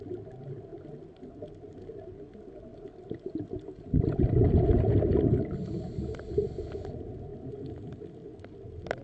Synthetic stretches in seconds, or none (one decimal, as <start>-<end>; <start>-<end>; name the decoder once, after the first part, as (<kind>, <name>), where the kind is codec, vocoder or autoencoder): none